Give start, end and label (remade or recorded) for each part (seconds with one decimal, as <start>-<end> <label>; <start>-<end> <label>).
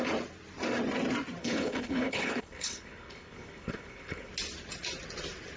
0.0-1.4 recorded; 1.4-4.3 remade; 4.3-5.6 recorded